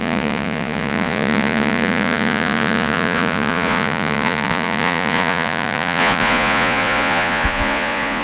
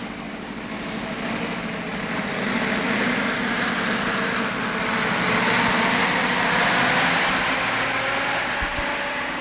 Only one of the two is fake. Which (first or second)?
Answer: first